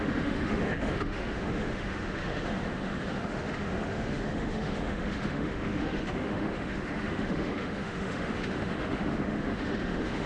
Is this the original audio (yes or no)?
no